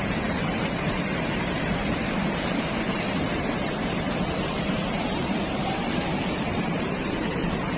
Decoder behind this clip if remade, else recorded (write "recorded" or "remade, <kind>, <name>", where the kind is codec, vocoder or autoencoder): remade, vocoder, BigVGAN v2